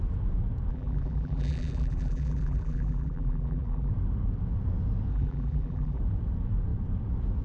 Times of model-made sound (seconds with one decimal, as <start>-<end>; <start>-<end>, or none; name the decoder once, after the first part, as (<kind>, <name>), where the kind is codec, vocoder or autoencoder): 0.7-3.9 (vocoder, BigVGAN v2); 5.1-6.0